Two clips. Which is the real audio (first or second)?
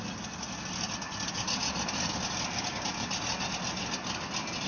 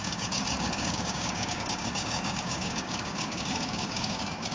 first